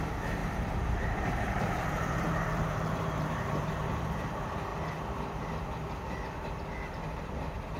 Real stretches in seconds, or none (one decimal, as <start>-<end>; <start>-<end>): 0.0-0.4; 4.0-7.8